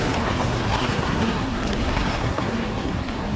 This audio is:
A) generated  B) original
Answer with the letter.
A